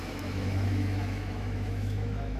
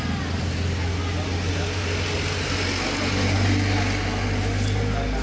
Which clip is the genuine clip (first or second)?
second